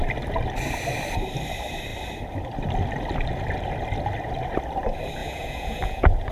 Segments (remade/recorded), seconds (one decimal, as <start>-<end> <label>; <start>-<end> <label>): 0.0-5.2 recorded; 5.2-6.3 remade